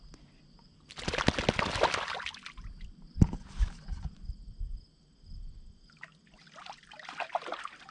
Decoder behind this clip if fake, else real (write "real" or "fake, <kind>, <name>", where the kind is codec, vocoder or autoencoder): real